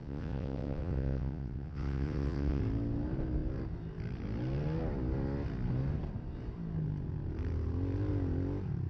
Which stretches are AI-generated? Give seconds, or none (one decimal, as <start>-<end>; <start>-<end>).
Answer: 0.0-2.6